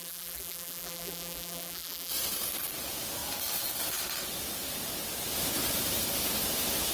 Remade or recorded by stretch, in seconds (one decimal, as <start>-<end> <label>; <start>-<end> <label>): 0.0-2.1 remade; 2.1-6.9 recorded